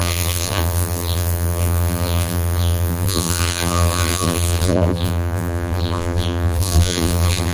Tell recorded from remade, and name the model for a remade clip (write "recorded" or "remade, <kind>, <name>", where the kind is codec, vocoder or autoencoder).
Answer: remade, vocoder, BigVGAN v2